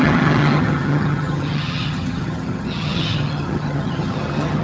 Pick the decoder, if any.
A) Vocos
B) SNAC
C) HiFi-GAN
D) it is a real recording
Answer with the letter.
C